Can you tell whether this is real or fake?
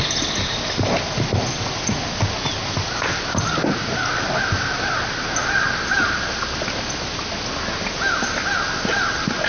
real